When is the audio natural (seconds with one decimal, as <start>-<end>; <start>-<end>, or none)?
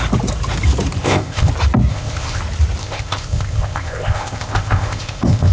0.0-1.0; 1.5-1.9; 2.4-2.8